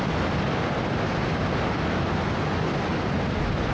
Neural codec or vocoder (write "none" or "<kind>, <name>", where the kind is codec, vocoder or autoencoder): none